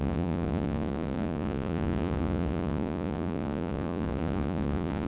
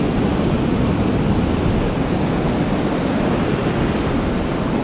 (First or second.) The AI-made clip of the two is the first